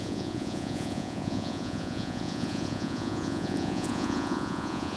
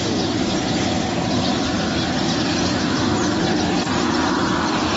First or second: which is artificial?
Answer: first